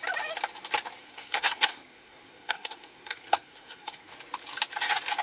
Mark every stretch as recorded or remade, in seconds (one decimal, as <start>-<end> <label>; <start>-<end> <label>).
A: 0.0-1.0 recorded; 1.0-4.1 remade; 4.1-5.2 recorded

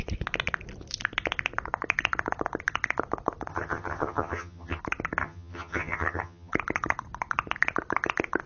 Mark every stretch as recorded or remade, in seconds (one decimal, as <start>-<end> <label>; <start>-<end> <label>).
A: 0.0-3.5 recorded; 3.5-4.8 remade; 4.8-5.2 recorded; 5.2-6.5 remade; 6.5-8.5 recorded